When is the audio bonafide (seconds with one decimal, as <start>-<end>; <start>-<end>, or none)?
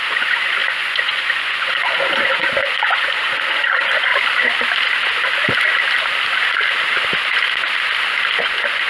4.1-8.4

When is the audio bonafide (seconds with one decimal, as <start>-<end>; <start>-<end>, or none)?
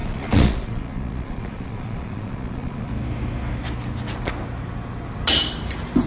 2.9-6.1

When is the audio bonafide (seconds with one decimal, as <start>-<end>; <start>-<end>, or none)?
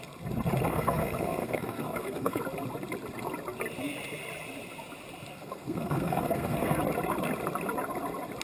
0.0-0.7; 2.4-5.3; 6.8-8.4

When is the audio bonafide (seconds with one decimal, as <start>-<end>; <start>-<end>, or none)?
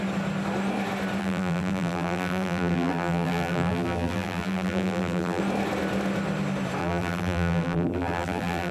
0.0-1.2; 5.4-6.8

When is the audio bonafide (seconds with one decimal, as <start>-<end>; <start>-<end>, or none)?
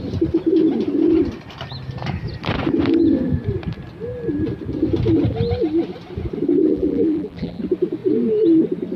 0.0-6.6; 7.6-9.0